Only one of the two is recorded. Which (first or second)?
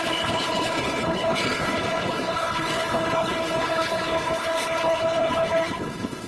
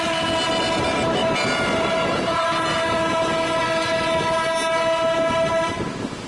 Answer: second